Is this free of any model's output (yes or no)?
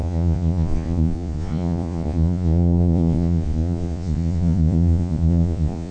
no